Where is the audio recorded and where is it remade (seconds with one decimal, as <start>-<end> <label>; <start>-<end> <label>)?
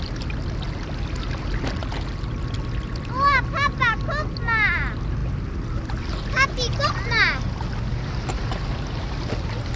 0.0-9.8 recorded